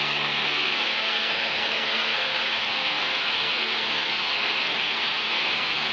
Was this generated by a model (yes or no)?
yes